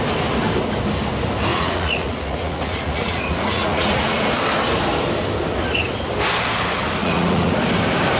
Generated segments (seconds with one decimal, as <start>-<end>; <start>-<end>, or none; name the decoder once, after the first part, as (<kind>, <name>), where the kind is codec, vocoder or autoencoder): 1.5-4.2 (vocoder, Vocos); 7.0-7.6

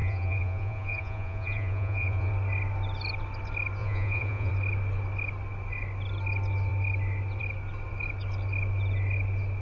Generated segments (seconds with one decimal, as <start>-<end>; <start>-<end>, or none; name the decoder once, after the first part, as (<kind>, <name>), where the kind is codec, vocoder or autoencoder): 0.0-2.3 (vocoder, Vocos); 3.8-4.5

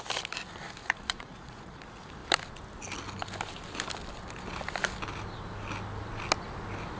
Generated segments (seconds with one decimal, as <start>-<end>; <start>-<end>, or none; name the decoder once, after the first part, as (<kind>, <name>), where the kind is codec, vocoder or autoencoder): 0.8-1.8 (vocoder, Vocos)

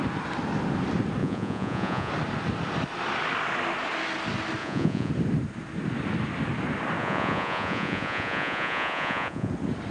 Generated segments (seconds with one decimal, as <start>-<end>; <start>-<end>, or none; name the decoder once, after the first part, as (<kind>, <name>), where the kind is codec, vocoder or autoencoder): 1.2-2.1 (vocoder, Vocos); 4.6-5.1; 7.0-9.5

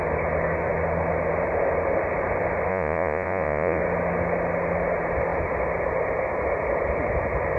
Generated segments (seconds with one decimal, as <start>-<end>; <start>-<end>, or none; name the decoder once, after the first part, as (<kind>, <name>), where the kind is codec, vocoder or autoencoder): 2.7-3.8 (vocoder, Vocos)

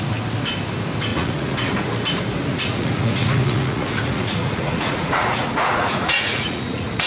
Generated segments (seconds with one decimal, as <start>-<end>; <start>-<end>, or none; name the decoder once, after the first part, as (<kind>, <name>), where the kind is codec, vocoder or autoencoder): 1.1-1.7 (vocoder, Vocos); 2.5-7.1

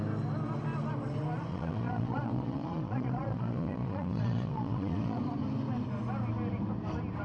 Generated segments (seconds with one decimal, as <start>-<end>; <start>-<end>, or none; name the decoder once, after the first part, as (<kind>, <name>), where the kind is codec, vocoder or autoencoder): 1.5-5.2 (vocoder, Vocos)